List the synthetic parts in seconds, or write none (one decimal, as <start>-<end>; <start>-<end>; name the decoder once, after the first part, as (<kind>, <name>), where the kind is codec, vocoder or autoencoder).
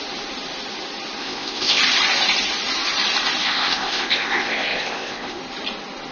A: 1.2-1.8 (codec, ZipCodec); 3.4-5.4